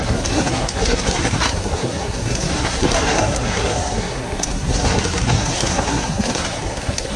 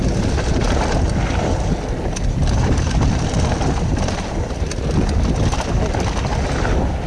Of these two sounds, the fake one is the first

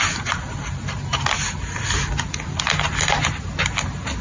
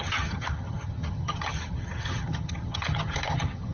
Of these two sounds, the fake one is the second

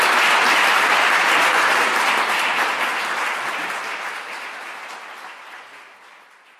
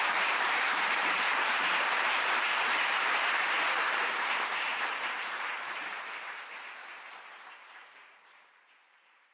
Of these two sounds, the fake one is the second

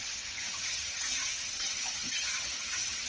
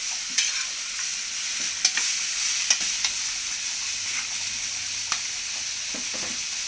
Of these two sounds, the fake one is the first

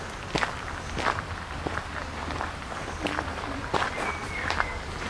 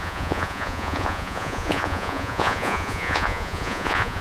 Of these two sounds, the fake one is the second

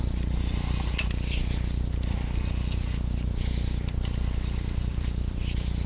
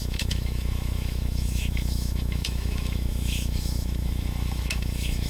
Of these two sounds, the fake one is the second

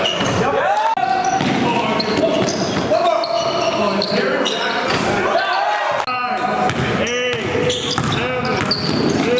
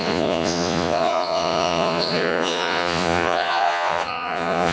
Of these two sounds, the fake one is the second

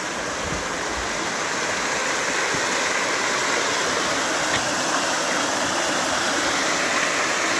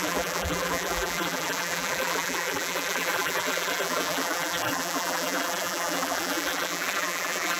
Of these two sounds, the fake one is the second